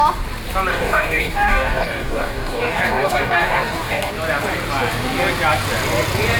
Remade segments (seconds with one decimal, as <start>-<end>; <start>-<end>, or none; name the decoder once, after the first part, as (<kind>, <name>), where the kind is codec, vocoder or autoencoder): 0.7-4.1 (codec, DAC)